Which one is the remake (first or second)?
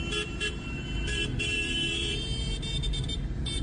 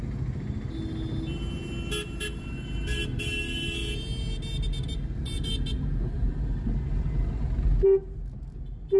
first